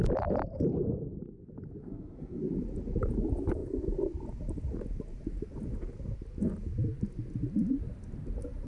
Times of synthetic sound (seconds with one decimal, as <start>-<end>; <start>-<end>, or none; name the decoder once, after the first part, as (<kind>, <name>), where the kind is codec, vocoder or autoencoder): 1.8-2.4 (codec, SNAC)